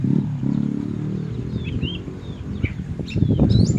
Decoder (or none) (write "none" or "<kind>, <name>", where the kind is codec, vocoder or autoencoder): none